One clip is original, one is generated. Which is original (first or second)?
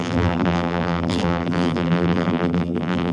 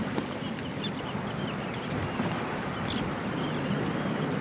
second